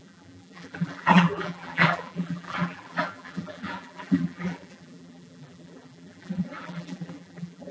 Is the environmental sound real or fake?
fake